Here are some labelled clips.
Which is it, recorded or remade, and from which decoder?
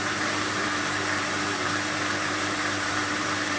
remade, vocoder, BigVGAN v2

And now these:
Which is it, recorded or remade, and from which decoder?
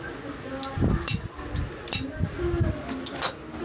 recorded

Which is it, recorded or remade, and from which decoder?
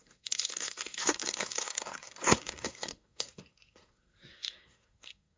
remade, codec, SNAC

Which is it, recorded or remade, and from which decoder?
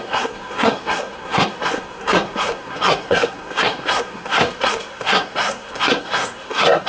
remade, codec, SNAC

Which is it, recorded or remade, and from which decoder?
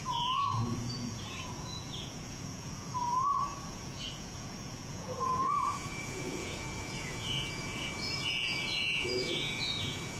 remade, vocoder, Vocos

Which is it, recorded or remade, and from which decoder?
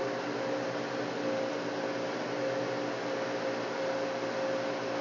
recorded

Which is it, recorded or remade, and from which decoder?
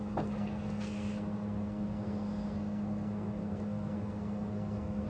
remade, codec, SNAC